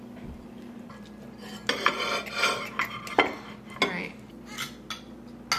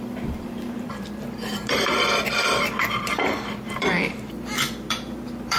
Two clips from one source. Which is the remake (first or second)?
second